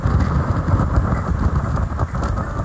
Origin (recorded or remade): remade